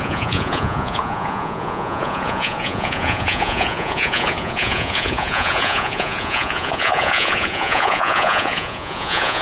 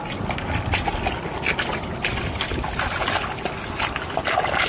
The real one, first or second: second